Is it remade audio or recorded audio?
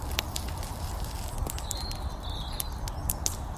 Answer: recorded